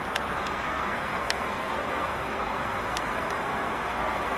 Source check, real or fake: fake